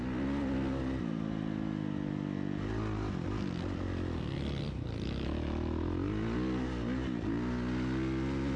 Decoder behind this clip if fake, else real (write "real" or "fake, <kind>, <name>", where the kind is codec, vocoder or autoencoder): real